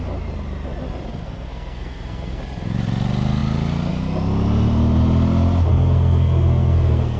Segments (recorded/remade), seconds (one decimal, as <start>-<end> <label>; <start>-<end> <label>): 0.0-1.2 recorded; 1.2-2.4 remade; 2.4-5.7 recorded; 5.7-7.2 remade